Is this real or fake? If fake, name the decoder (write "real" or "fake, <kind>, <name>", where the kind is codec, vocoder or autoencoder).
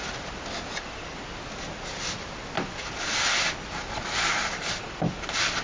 real